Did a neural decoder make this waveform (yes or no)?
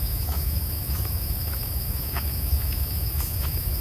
yes